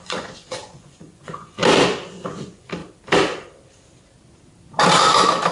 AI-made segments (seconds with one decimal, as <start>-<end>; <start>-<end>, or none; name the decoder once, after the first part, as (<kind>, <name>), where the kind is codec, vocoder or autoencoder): 0.0-1.6 (vocoder, Vocos); 2.1-2.8